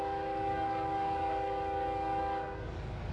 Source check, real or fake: fake